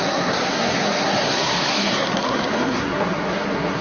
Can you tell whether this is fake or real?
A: fake